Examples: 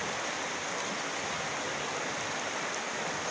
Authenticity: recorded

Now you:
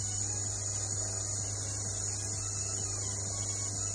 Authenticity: recorded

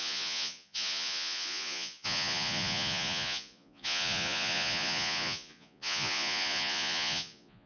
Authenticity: remade